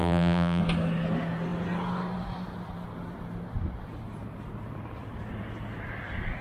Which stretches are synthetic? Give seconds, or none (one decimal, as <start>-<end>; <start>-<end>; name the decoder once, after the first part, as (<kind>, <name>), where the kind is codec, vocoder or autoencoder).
0.0-0.6 (vocoder, BigVGAN v2)